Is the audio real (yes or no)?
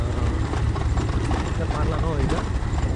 no